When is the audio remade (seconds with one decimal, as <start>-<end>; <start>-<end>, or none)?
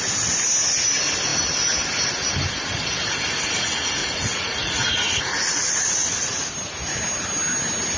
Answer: 4.0-6.5